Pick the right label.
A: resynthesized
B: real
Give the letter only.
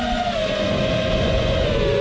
A